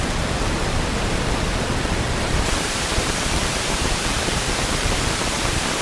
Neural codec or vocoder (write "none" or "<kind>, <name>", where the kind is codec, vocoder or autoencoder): vocoder, BigVGAN v2